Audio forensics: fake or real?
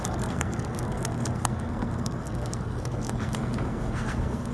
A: fake